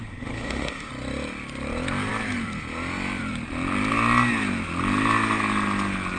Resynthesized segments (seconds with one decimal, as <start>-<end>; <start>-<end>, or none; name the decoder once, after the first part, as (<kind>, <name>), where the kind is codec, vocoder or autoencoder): 0.0-0.9 (autoencoder, DAC-VAE)

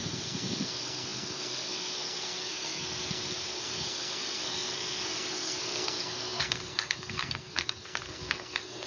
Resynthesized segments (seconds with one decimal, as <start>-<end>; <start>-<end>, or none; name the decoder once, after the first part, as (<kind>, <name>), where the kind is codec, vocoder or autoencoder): 0.0-8.9 (codec, SNAC)

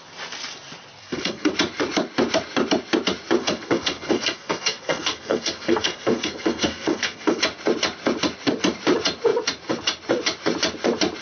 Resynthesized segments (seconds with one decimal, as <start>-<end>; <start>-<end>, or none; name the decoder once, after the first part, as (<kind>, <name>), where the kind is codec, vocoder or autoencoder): 1.0-1.5 (codec, SNAC); 3.4-7.4

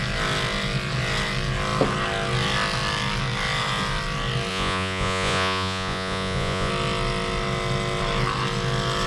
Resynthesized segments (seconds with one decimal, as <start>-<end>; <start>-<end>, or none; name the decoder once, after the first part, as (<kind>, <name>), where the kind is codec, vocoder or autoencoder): 4.5-6.7 (vocoder, Vocos)